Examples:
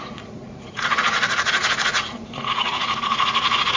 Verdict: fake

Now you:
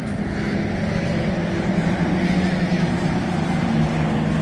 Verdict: real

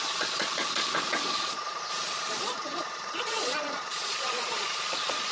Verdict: fake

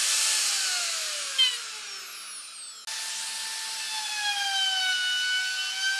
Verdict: real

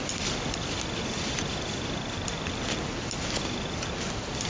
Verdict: real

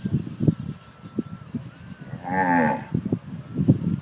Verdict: real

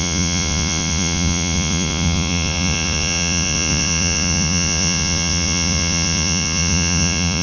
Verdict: fake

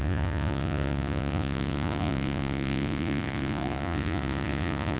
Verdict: fake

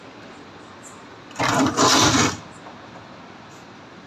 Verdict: real